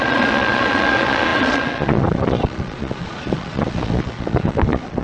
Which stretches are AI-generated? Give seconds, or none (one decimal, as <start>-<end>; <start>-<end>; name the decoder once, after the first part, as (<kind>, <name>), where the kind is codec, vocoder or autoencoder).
0.0-5.0 (vocoder, Vocos)